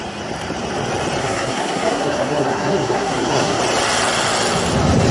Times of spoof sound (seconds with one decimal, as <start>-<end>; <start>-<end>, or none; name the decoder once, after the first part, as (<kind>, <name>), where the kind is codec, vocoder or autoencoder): 1.2-3.6 (codec, SNAC)

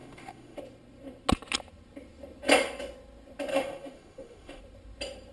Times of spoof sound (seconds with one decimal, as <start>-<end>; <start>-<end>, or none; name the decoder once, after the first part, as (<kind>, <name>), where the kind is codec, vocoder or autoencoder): 0.0-0.6 (autoencoder, DAC-VAE); 3.5-4.6

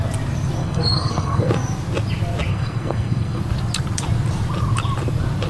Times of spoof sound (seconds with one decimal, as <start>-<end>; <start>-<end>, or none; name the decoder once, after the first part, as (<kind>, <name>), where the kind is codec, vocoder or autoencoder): 0.6-1.5 (codec, SNAC); 2.5-3.4

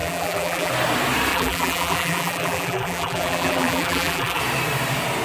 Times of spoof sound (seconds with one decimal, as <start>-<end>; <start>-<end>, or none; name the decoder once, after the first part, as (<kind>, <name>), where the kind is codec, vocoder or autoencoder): 0.0-0.7 (vocoder, BigVGAN v2); 1.3-4.4

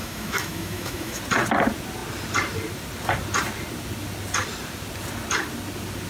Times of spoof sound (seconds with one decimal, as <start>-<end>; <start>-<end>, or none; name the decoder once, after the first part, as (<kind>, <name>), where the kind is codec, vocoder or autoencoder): 0.0-1.2 (autoencoder, DAC-VAE)